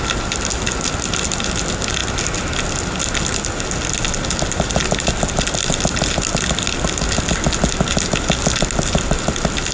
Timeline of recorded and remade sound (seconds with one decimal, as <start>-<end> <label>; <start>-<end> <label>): 0.0-9.7 recorded